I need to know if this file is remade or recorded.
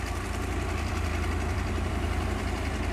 remade